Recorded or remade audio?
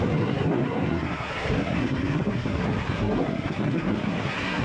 remade